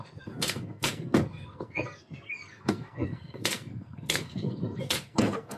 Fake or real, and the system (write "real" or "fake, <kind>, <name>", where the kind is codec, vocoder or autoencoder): fake, codec, SNAC